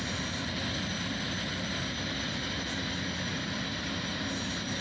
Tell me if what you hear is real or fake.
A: real